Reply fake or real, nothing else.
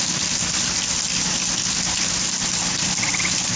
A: real